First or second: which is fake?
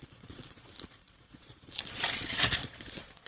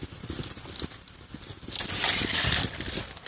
first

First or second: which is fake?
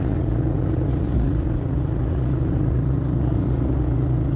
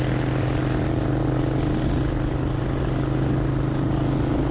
first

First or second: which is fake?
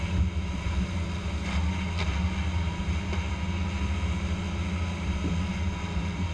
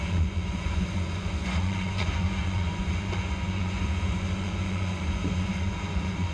second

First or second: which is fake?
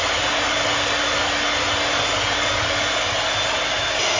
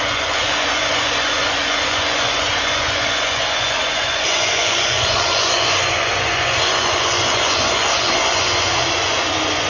second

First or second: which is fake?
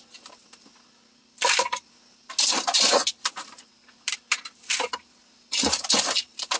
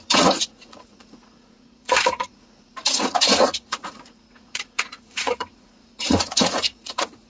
second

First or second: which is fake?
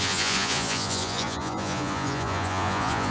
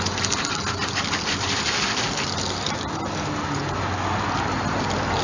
first